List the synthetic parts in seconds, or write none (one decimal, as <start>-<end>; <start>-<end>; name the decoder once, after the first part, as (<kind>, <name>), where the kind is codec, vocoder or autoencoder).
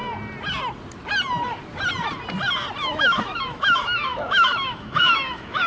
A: 2.8-5.7 (autoencoder, DAC-VAE)